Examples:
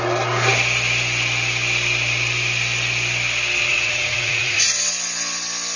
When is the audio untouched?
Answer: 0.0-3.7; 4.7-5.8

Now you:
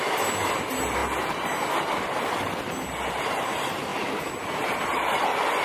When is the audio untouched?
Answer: 0.0-5.6

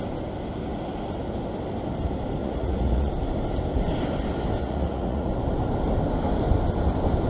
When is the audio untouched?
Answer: 0.0-2.4; 3.1-4.6; 5.3-7.3

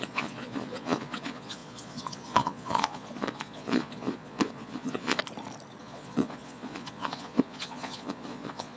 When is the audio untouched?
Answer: 5.2-5.8

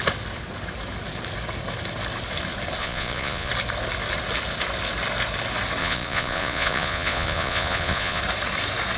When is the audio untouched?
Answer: 0.0-2.8; 3.5-5.8; 8.2-9.0

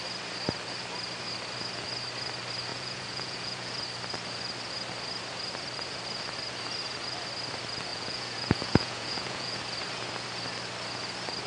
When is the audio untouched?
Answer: 0.0-2.7; 3.7-7.9; 9.6-11.5

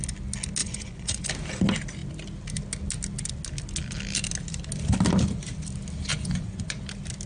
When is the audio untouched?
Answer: 0.0-0.6; 1.3-6.1; 6.8-7.3

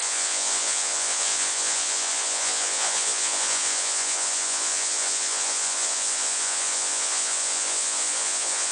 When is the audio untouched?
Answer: none